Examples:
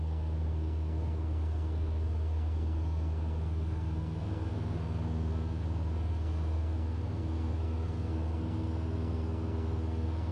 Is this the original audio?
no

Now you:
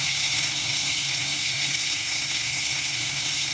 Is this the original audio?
no